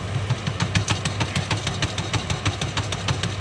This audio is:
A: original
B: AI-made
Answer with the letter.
A